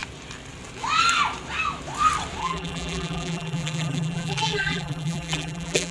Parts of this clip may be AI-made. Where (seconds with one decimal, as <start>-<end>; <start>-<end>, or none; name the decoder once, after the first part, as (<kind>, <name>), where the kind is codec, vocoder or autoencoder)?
2.4-5.9 (vocoder, BigVGAN v2)